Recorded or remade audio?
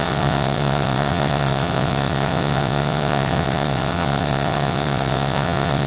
remade